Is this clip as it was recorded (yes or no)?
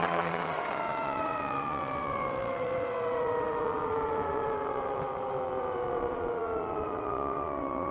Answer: no